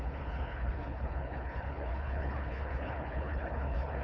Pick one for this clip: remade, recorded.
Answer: remade